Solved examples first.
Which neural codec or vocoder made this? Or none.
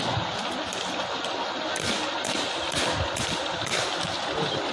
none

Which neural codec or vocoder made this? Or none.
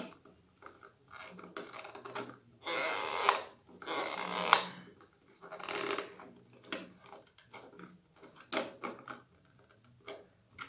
none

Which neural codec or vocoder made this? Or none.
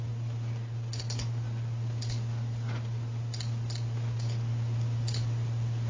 none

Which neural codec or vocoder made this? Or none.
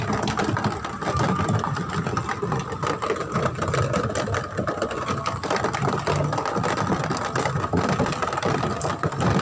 vocoder, BigVGAN v2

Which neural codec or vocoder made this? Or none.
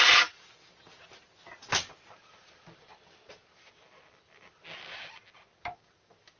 none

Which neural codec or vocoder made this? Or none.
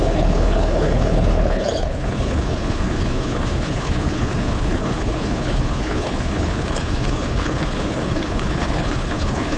codec, HILCodec